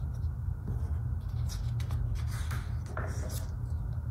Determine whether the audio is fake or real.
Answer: real